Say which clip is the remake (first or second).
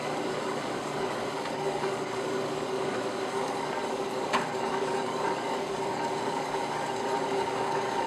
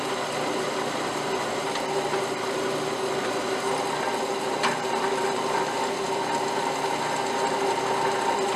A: first